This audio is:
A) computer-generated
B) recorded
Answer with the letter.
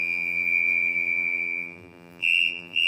A